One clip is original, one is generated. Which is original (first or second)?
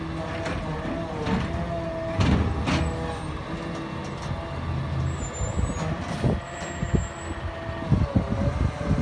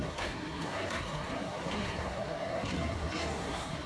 first